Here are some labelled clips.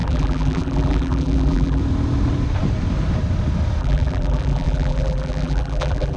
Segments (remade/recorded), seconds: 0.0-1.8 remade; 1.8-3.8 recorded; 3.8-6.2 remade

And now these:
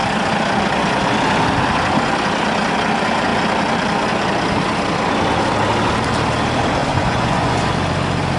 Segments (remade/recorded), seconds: 0.0-6.8 recorded; 6.8-7.7 remade; 7.7-8.4 recorded

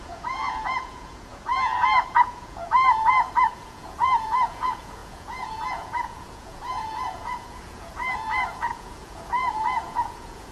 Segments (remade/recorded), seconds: 0.0-10.5 remade